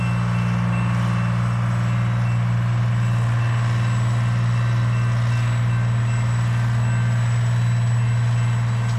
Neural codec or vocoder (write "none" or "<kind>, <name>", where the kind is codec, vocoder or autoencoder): none